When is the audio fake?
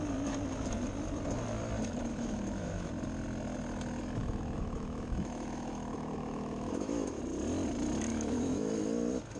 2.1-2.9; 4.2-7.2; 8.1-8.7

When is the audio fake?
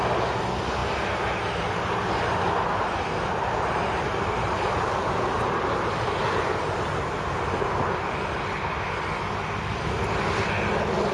none